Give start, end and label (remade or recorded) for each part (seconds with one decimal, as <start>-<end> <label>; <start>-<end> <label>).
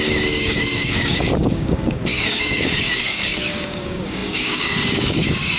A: 0.0-5.6 remade